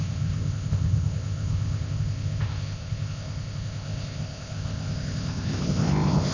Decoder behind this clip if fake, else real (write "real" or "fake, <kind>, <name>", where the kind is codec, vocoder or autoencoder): fake, codec, ZipCodec